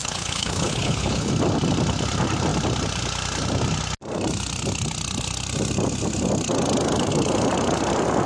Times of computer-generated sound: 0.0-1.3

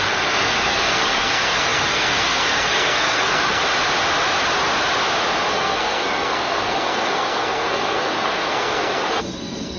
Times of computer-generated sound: 0.0-3.6; 5.5-9.8

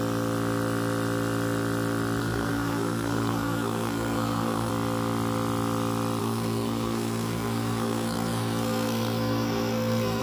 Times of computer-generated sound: 2.2-4.7; 6.2-10.2

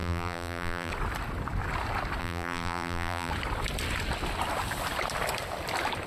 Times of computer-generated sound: 0.0-0.9; 2.2-3.3

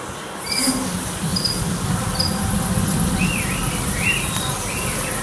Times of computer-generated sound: 1.3-2.4

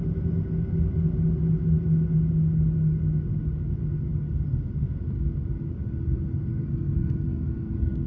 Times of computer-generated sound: 6.5-8.1